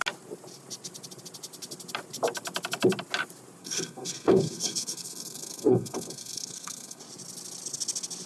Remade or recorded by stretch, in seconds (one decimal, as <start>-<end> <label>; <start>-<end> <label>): 0.0-3.6 recorded; 3.6-7.0 remade; 7.0-8.3 recorded